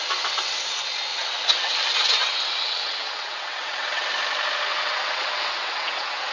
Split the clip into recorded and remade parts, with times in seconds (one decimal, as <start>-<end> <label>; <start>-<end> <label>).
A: 0.0-1.1 recorded; 1.1-1.8 remade; 1.8-2.2 recorded; 2.2-4.1 remade; 4.1-4.7 recorded; 4.7-6.3 remade